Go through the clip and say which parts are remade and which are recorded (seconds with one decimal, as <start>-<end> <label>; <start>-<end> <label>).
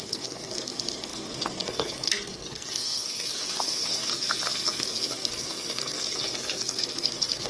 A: 0.0-7.5 remade